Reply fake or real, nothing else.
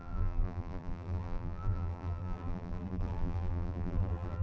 fake